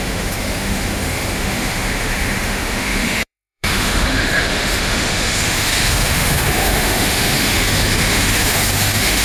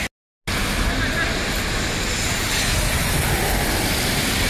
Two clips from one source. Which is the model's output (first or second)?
first